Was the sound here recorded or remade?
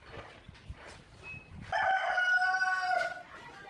recorded